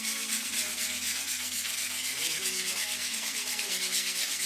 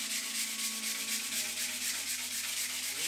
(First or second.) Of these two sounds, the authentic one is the second